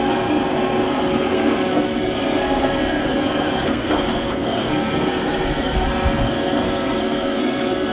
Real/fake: fake